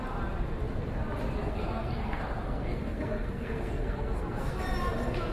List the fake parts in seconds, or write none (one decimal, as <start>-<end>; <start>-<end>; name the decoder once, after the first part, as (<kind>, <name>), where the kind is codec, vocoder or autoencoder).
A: 1.4-4.6 (codec, SNAC)